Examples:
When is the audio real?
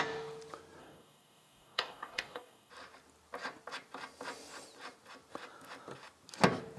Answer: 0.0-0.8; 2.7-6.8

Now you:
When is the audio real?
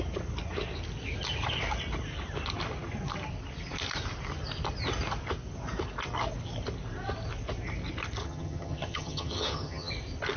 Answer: 0.0-8.2; 9.9-10.4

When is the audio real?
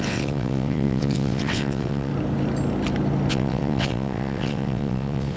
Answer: 2.1-3.3